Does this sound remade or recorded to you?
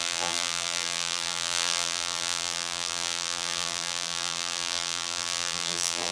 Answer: remade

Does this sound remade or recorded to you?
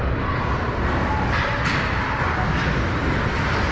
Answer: recorded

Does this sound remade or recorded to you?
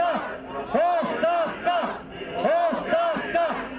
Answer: recorded